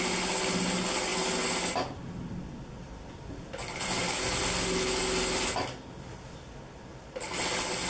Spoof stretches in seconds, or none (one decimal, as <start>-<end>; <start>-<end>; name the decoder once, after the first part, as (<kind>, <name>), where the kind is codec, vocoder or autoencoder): none